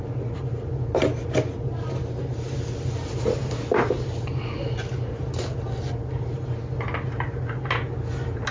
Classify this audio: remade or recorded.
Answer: recorded